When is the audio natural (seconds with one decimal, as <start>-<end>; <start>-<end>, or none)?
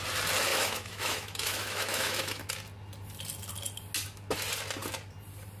0.0-0.5; 2.5-5.6